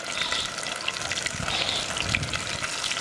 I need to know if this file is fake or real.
real